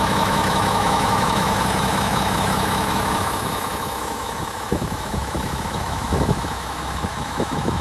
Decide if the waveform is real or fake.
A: fake